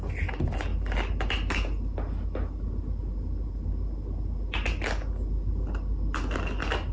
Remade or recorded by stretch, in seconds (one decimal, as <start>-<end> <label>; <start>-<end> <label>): 0.0-6.9 recorded